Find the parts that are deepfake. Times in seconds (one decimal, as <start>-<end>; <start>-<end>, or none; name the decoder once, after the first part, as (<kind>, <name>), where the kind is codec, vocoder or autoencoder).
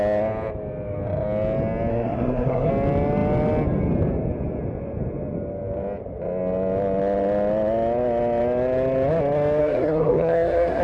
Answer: 1.9-2.7 (codec, SNAC); 9.6-10.8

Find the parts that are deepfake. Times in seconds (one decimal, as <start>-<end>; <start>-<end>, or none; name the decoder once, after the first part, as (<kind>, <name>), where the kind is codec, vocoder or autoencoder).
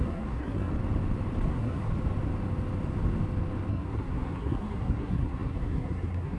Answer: 0.0-0.7 (codec, SNAC); 1.5-1.9; 3.7-6.4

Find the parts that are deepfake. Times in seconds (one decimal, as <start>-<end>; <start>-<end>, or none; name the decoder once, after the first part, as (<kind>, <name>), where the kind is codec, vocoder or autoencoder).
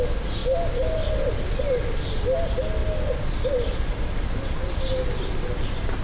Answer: none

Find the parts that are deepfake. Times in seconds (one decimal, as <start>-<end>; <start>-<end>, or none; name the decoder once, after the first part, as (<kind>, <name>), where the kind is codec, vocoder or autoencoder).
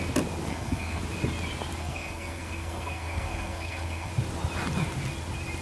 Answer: 0.5-1.0 (codec, SNAC); 1.8-4.1